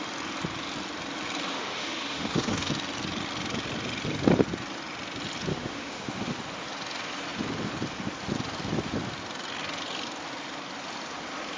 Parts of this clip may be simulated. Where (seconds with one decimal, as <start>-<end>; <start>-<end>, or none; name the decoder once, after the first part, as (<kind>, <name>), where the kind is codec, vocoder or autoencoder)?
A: 1.5-2.7 (autoencoder, DAC-VAE); 5.5-6.1